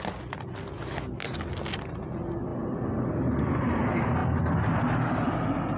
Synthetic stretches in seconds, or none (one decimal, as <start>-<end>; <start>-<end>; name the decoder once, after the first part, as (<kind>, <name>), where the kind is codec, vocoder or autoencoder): none